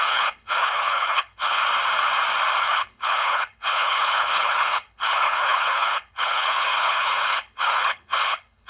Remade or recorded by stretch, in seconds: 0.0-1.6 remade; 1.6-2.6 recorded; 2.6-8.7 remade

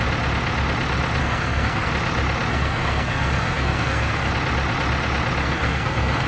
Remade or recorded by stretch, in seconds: 0.0-1.2 recorded; 1.2-1.9 remade; 1.9-2.5 recorded; 2.5-4.3 remade; 4.3-5.4 recorded; 5.4-6.3 remade

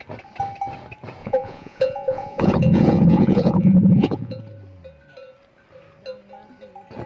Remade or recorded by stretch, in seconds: 0.0-1.2 recorded; 1.2-4.4 remade; 4.4-7.1 recorded

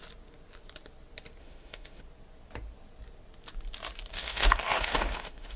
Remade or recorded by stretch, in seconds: 0.0-1.4 recorded; 1.4-2.0 remade; 2.0-4.1 recorded; 4.1-5.6 remade

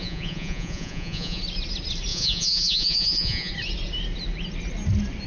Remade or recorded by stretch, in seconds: 0.0-1.4 remade; 1.4-2.1 recorded; 2.1-3.5 remade; 3.5-5.3 recorded

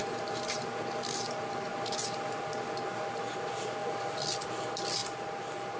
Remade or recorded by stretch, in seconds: 0.0-1.7 remade; 1.7-3.3 recorded; 3.3-5.0 remade; 5.0-5.8 recorded